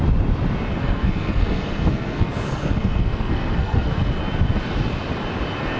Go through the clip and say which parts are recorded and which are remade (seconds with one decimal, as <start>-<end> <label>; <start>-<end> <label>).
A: 0.0-0.7 recorded; 0.7-4.2 remade; 4.2-5.8 recorded